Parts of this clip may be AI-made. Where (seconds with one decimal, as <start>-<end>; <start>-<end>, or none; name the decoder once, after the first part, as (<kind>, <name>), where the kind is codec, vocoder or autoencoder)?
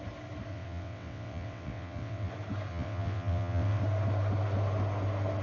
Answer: 0.5-2.3 (vocoder, WaveNeXt); 2.7-3.8